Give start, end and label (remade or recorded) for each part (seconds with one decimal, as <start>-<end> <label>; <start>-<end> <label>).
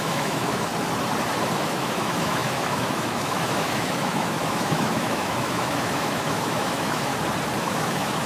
0.0-0.7 remade; 0.7-1.5 recorded; 1.5-7.1 remade; 7.1-7.6 recorded; 7.6-8.3 remade